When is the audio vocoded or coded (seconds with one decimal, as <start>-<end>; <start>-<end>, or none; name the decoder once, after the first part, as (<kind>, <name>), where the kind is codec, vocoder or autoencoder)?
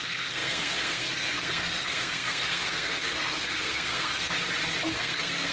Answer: 0.0-4.3 (codec, SNAC); 4.9-5.5